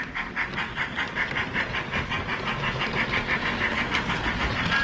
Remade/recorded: recorded